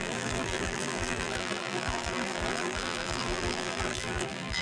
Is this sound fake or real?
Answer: fake